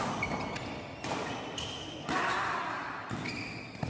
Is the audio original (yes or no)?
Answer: yes